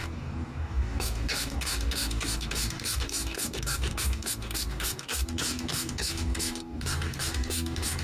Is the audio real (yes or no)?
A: no